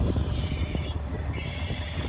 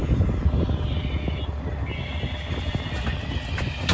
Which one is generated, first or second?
first